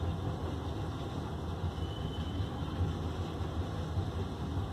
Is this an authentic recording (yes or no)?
yes